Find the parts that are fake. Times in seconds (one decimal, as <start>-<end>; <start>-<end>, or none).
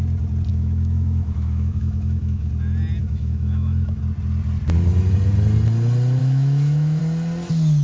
0.5-2.5; 3.0-4.0; 6.2-7.0